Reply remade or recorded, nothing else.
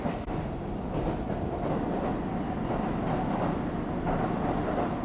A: recorded